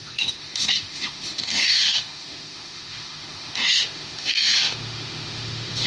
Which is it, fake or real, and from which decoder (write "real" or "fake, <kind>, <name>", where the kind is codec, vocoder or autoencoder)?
fake, autoencoder, DAC-VAE